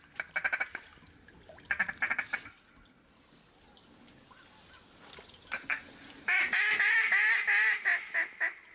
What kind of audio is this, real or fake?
real